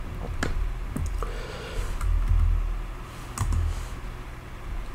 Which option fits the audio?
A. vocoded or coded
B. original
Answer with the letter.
B